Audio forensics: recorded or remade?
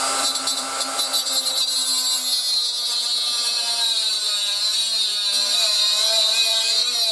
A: recorded